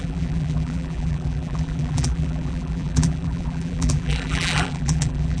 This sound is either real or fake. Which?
fake